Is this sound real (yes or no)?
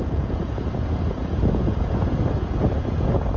no